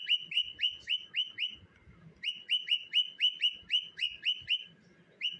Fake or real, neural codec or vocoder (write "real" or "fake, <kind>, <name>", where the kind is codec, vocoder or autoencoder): real